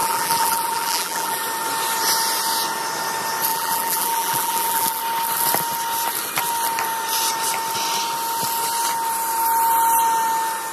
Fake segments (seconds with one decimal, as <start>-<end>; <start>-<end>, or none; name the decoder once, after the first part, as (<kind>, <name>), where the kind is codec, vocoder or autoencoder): 0.0-1.4 (vocoder, BigVGAN v2); 3.5-5.0